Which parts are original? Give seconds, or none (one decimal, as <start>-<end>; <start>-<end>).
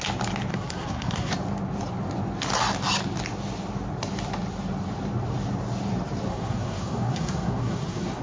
0.0-0.5; 1.3-6.3